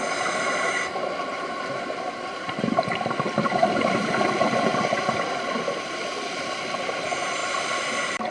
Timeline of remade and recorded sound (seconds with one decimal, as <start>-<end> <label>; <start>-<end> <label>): 0.0-1.3 recorded; 1.3-4.0 remade; 4.0-7.4 recorded; 7.4-8.3 remade